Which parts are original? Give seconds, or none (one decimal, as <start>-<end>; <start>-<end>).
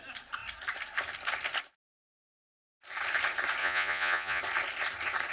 0.0-3.6; 4.4-5.3